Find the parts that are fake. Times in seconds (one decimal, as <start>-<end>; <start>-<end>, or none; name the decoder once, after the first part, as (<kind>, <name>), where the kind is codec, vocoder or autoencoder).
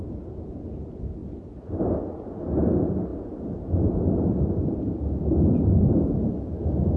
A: none